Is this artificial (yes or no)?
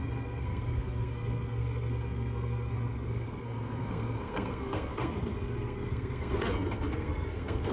yes